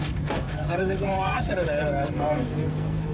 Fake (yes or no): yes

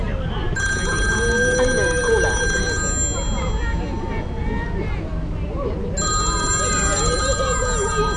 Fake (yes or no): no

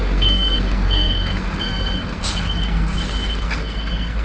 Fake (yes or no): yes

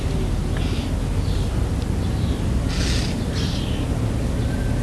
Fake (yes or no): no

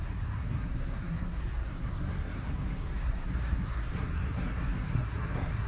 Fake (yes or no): yes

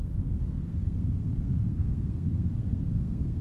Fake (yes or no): yes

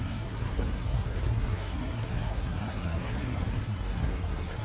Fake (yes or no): yes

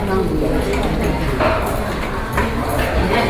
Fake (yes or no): no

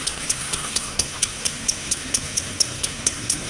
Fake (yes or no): yes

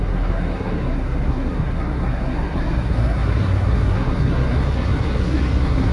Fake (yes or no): yes